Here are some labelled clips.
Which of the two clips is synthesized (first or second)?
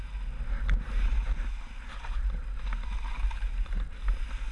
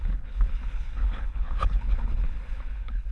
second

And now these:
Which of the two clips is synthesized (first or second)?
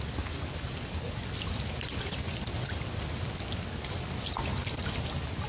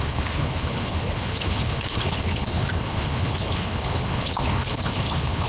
second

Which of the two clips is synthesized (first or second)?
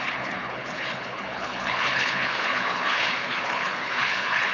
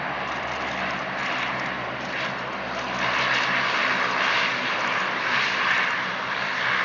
first